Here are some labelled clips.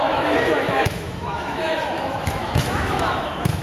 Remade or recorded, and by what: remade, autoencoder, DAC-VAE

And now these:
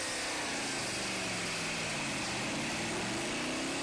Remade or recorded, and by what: recorded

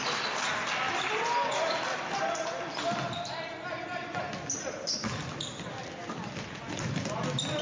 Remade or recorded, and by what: recorded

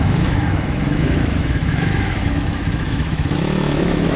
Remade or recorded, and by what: remade, autoencoder, DAC-VAE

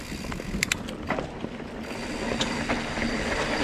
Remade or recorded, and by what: recorded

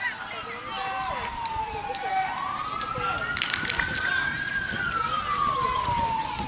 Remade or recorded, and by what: recorded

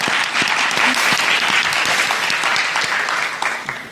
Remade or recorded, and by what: recorded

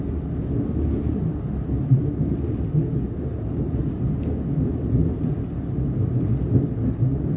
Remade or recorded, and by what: recorded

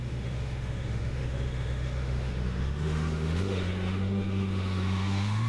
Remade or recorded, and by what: remade, autoencoder, DAC-VAE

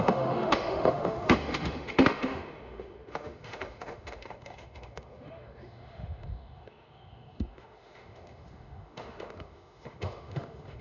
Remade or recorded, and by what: remade, autoencoder, DAC-VAE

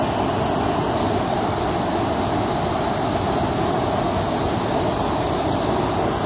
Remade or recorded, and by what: recorded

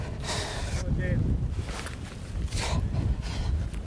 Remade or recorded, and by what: recorded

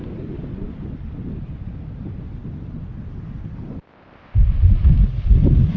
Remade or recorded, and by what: recorded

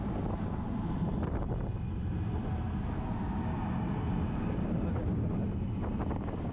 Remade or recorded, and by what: recorded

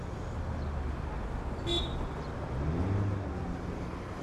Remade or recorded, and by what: recorded